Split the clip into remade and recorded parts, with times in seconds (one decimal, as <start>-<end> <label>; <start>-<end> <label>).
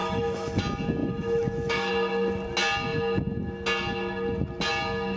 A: 0.0-0.6 remade; 0.6-1.0 recorded; 1.0-1.9 remade; 1.9-5.2 recorded